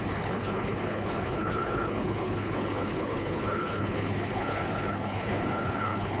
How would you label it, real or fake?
fake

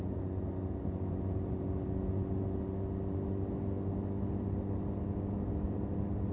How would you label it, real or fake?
real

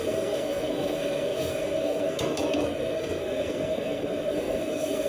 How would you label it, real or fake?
fake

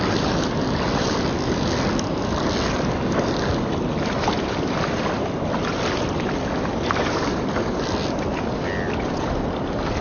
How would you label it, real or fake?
real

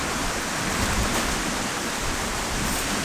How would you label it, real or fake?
real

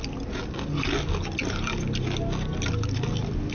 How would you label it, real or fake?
real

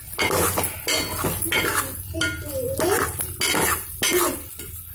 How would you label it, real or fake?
real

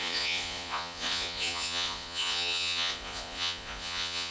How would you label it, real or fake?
fake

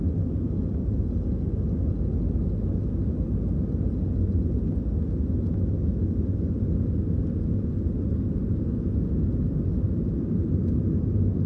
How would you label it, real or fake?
real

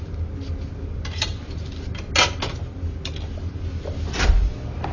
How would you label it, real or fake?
real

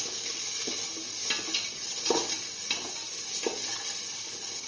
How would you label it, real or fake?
real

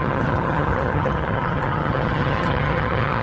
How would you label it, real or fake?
fake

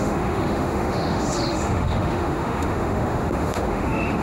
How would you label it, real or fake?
fake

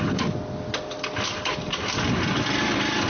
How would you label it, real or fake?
real